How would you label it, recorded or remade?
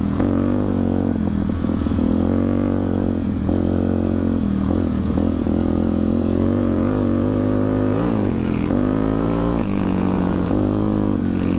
remade